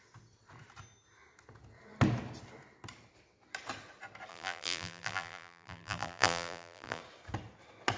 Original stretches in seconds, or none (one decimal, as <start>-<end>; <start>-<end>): 0.0-4.3; 7.0-8.0